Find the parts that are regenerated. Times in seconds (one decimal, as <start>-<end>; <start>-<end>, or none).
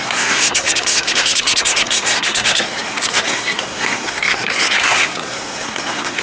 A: 0.0-6.2